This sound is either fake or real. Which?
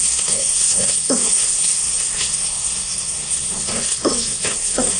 fake